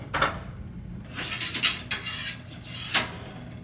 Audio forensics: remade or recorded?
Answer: recorded